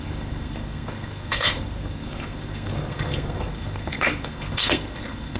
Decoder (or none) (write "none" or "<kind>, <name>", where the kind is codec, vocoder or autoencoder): codec, SNAC